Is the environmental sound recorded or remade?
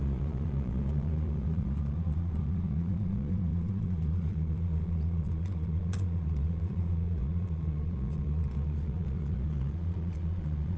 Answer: remade